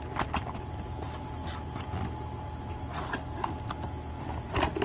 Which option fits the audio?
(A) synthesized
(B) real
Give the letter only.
B